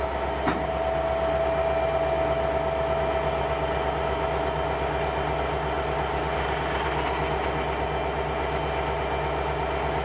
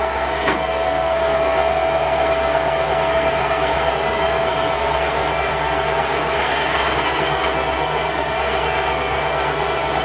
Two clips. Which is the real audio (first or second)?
first